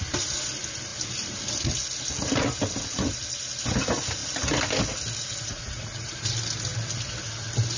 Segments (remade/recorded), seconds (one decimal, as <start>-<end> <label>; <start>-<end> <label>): 0.0-5.5 recorded; 5.5-6.1 remade; 6.1-7.8 recorded